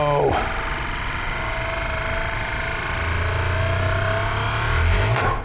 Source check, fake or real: real